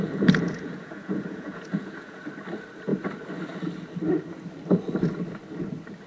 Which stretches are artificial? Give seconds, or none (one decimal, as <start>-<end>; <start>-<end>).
0.0-2.2